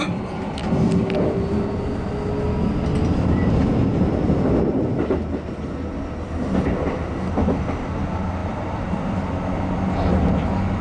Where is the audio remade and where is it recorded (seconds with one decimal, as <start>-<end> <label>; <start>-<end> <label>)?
0.0-8.4 recorded; 8.4-9.3 remade; 9.3-10.8 recorded